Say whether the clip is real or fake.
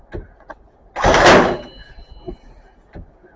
real